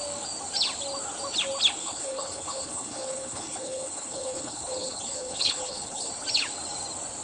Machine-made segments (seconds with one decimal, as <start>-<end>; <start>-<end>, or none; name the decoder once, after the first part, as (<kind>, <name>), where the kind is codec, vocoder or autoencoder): 1.8-6.1 (codec, HILCodec)